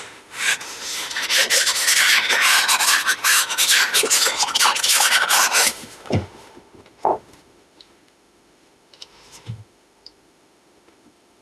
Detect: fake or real fake